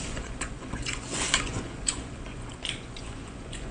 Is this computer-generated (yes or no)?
yes